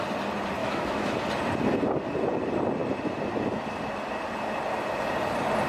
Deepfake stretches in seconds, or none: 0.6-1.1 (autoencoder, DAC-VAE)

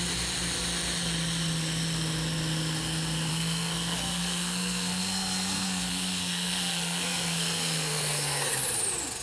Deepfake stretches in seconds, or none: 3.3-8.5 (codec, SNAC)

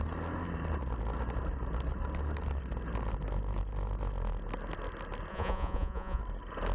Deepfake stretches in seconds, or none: 5.3-6.2 (vocoder, Vocos)

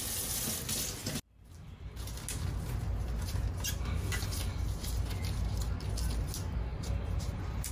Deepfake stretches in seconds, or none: 6.7-7.7 (vocoder, BigVGAN v2)

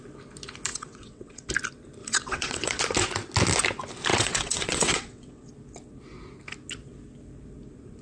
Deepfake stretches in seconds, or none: 0.7-1.5 (vocoder, WaveNeXt); 2.0-2.8; 4.1-5.5

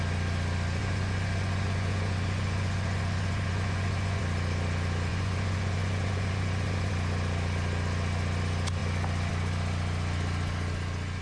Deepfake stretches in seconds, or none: 0.8-4.2 (vocoder, Vocos); 5.1-6.9